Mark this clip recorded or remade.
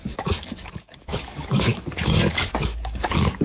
remade